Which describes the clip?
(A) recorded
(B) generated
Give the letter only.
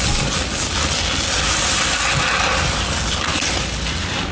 A